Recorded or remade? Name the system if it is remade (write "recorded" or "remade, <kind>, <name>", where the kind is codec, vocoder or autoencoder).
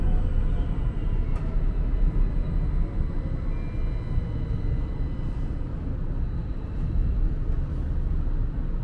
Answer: recorded